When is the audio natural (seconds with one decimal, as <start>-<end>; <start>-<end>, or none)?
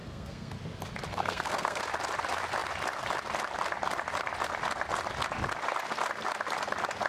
0.5-1.1; 1.8-7.1